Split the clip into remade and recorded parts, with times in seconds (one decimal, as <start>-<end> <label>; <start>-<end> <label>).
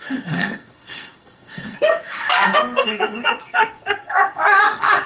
0.0-5.1 remade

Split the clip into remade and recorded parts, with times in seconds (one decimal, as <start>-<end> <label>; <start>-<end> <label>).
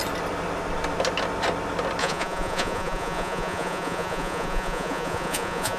0.0-2.0 recorded; 2.0-5.8 remade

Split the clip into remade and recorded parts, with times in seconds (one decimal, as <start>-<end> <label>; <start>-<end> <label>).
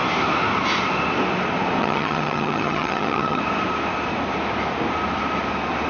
0.0-1.8 recorded; 1.8-3.4 remade; 3.4-5.9 recorded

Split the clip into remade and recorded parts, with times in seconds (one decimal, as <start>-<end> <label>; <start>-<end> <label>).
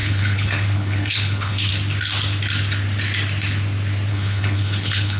0.0-1.7 remade; 1.7-4.1 recorded; 4.1-5.2 remade